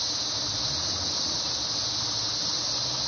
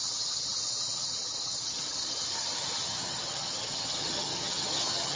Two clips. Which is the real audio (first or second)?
first